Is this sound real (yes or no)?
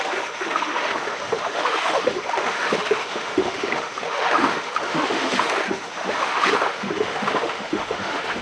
no